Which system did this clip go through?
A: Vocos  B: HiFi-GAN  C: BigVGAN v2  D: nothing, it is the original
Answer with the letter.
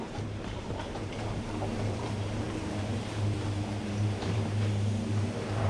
C